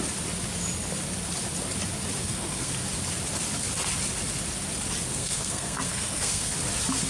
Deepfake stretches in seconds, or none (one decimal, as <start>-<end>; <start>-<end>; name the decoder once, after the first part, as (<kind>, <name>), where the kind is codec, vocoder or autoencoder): 2.2-2.7 (codec, SNAC); 5.1-6.5